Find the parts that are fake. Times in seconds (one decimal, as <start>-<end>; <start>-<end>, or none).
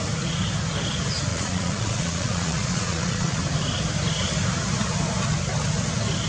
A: 1.3-3.4